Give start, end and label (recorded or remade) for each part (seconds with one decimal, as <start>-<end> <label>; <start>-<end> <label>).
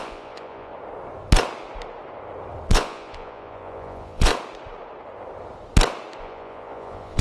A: 0.0-0.7 remade; 0.7-2.7 recorded; 2.7-4.3 remade; 4.3-6.2 recorded; 6.2-7.2 remade